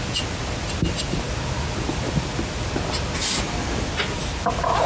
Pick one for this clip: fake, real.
real